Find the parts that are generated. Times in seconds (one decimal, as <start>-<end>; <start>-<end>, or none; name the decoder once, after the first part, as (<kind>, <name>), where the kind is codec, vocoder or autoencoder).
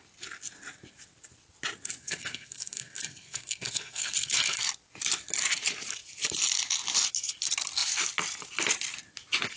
2.0-4.6 (codec, SNAC)